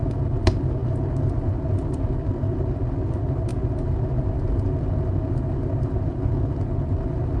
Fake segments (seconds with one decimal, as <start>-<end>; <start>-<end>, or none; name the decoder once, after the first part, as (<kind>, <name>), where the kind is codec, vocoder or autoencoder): none